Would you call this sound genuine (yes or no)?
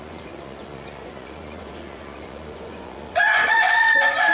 no